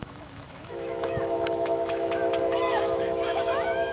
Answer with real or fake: fake